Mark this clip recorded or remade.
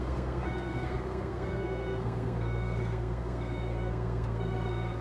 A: remade